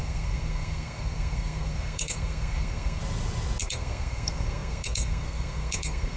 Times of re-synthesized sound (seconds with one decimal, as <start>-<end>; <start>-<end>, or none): 0.0-3.0; 3.6-6.2